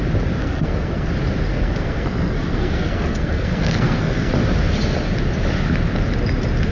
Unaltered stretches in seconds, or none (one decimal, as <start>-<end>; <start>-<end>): 0.0-0.4; 1.1-1.5; 4.3-6.7